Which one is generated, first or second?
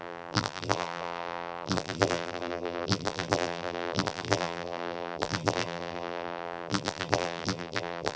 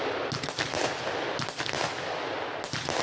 first